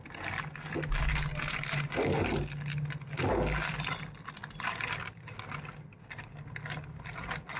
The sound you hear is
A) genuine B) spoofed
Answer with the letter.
A